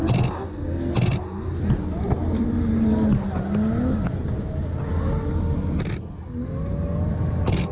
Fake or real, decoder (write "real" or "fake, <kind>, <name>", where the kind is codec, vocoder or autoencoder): real